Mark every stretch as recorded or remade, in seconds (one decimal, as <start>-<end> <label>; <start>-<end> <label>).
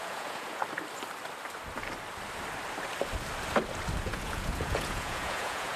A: 0.0-0.6 remade; 0.6-4.0 recorded; 4.0-5.8 remade